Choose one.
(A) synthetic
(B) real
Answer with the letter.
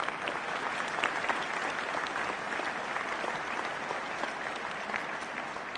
B